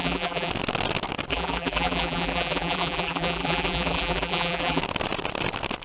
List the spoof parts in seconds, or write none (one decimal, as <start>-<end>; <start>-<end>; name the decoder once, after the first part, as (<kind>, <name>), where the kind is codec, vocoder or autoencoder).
0.0-0.5 (vocoder, BigVGAN v2); 1.3-4.8